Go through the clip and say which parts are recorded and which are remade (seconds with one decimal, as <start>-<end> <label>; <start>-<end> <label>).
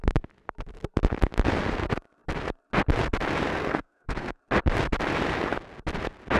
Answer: 0.0-3.5 recorded; 3.5-4.4 remade; 4.4-6.4 recorded